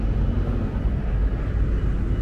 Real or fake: real